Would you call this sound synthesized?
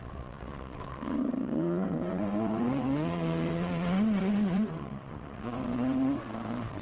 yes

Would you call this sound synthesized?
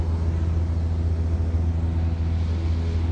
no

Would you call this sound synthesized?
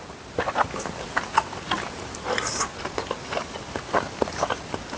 no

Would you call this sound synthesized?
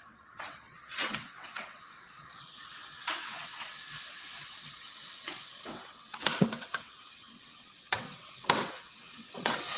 yes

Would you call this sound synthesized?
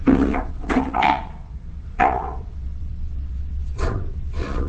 yes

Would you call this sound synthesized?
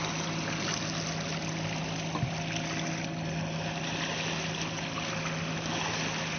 no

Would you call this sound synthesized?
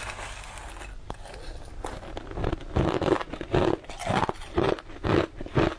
no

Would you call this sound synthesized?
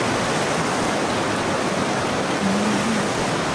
no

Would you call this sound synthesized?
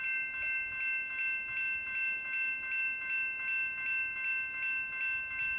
no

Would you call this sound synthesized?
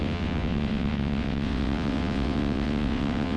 yes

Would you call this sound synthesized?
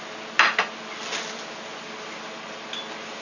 no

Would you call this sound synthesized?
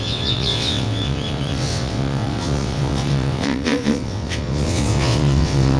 yes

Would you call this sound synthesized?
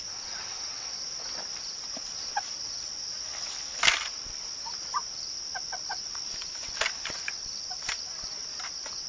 no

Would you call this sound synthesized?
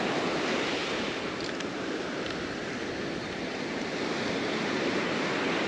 no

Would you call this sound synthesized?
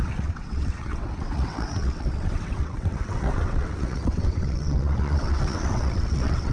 yes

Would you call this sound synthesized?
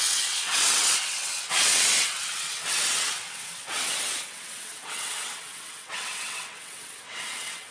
yes